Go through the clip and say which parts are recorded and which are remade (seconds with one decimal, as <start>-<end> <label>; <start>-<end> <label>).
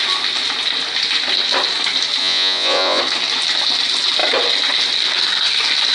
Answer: 0.0-2.2 recorded; 2.2-3.0 remade; 3.0-5.9 recorded